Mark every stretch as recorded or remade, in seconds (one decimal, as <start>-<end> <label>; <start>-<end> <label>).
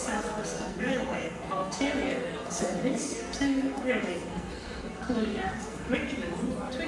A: 0.0-6.0 remade; 6.0-6.9 recorded